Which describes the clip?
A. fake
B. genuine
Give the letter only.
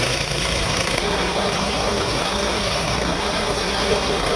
A